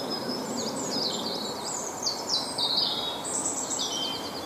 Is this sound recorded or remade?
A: remade